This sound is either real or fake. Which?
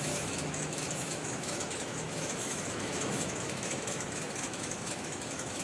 fake